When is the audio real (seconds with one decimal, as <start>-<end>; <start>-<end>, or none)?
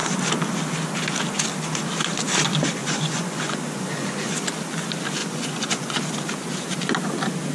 0.0-2.8; 4.5-5.2; 6.0-7.5